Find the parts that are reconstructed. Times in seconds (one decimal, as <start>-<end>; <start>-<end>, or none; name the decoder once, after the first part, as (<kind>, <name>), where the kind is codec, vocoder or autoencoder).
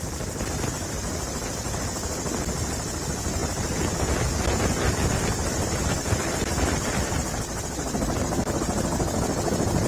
none